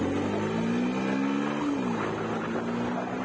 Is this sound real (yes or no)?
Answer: yes